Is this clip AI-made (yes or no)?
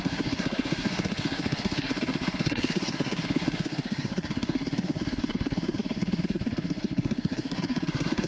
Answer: yes